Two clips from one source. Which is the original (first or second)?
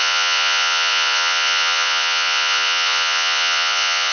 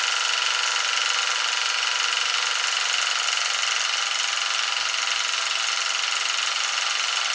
second